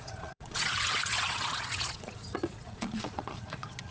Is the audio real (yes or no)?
no